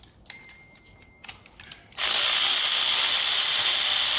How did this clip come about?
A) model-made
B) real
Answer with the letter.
A